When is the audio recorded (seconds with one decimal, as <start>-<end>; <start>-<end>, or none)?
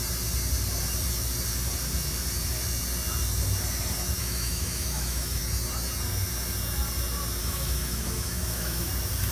0.0-4.2; 5.4-7.4; 8.9-9.3